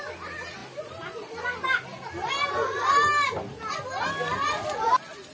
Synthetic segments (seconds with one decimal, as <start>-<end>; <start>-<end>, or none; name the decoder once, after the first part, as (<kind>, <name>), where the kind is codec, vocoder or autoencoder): none